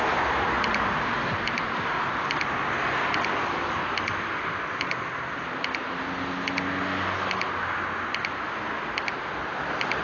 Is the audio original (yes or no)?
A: yes